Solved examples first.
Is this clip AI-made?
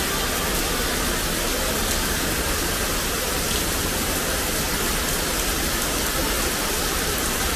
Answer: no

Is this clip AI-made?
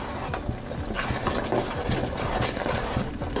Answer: no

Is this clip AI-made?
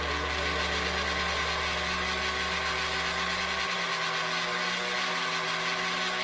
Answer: no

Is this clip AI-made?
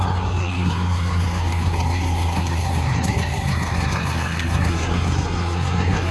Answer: yes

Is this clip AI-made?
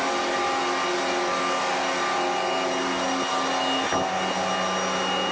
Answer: no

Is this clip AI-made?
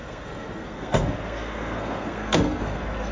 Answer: yes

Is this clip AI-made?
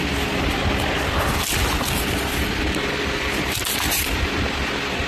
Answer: no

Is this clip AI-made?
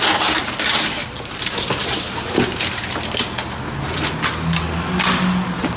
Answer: no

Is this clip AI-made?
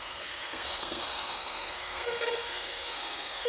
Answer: yes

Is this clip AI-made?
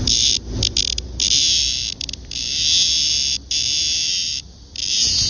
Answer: no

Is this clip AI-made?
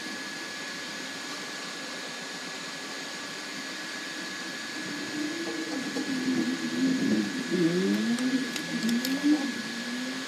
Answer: no